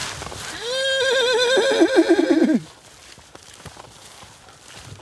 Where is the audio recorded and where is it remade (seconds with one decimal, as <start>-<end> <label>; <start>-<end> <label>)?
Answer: 0.0-5.0 recorded